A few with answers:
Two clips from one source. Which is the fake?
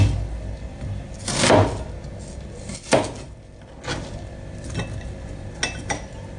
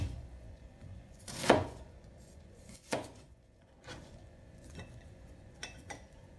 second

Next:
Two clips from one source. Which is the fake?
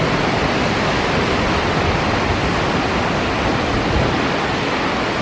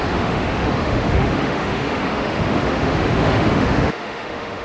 second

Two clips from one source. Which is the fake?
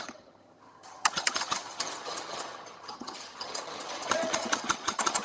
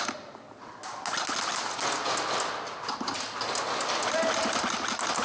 first